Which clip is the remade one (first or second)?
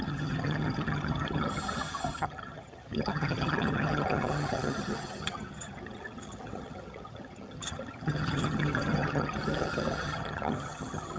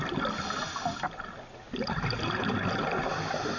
first